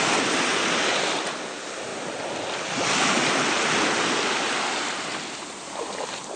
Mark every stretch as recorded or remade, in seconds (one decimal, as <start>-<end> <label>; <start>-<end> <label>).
0.0-6.4 recorded